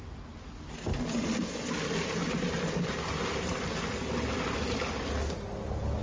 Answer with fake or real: real